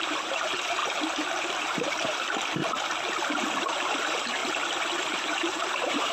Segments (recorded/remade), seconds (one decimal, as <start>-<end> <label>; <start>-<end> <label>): 0.0-0.8 remade; 0.8-1.4 recorded; 1.4-2.6 remade; 2.6-3.2 recorded; 3.2-4.4 remade; 4.4-5.1 recorded; 5.1-6.1 remade